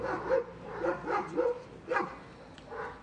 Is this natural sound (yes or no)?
yes